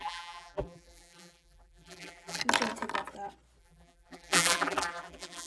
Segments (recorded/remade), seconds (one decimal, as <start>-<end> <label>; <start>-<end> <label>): 0.0-2.4 remade; 2.4-3.6 recorded; 3.6-5.5 remade